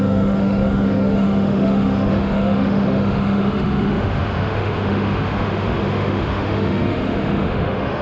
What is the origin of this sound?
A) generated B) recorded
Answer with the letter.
A